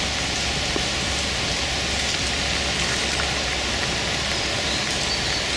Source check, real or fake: real